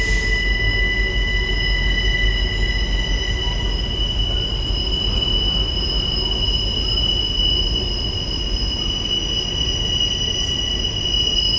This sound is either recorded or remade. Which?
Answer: recorded